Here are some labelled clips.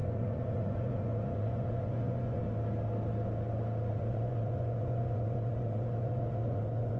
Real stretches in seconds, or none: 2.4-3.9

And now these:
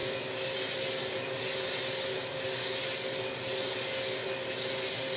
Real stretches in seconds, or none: 0.0-5.2